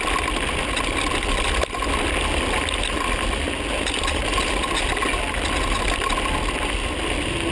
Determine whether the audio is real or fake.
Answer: real